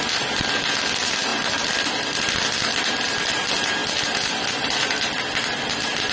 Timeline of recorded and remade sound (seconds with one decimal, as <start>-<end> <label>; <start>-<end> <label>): 0.0-6.1 recorded